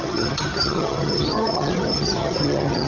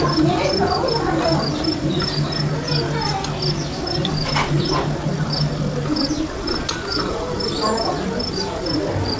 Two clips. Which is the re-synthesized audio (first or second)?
first